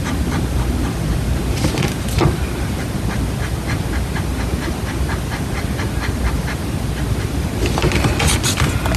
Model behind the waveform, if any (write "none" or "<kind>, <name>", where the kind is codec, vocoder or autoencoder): none